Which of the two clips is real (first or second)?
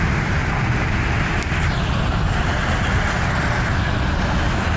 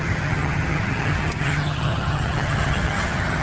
first